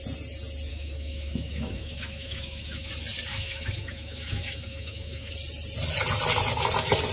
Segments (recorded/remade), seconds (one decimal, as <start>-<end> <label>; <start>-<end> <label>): 0.0-0.7 recorded; 0.7-2.9 remade; 2.9-3.3 recorded; 3.3-5.3 remade; 5.3-7.1 recorded